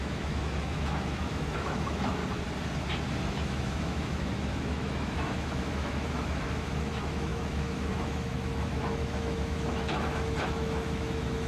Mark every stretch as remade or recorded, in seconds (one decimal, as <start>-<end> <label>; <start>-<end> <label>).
0.0-2.2 remade; 2.2-3.3 recorded; 3.3-11.5 remade